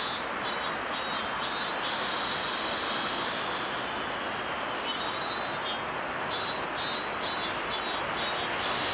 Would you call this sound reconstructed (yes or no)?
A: no